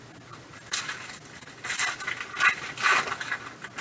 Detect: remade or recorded recorded